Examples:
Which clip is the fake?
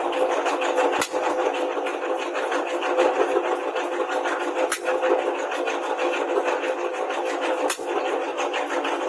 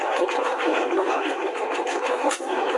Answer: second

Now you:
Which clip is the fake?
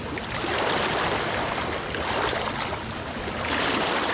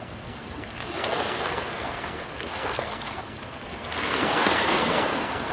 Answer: second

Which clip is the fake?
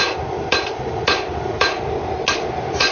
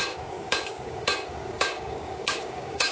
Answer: second